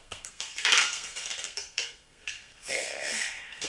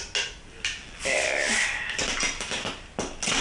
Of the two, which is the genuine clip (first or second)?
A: second